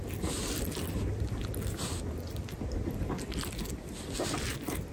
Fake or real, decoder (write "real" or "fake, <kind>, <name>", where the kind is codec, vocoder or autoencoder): real